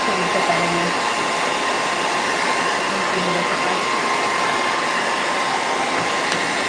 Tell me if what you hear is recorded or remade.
recorded